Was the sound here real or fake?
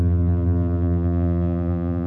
fake